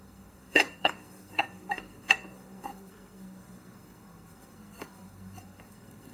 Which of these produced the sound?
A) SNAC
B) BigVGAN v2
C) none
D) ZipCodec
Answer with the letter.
A